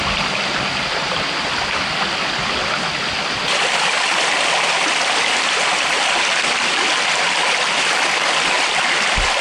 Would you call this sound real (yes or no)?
yes